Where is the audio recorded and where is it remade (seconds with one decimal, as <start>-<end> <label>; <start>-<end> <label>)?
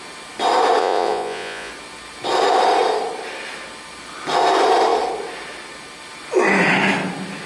0.0-0.8 recorded; 0.8-1.7 remade; 1.7-7.5 recorded